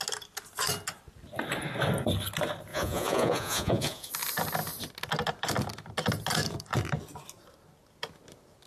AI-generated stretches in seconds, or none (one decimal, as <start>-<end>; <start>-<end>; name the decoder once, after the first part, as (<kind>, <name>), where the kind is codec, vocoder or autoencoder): 2.7-4.1 (vocoder, Vocos)